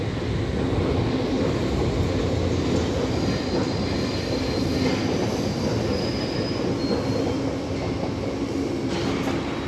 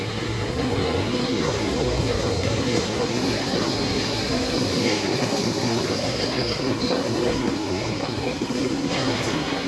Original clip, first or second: first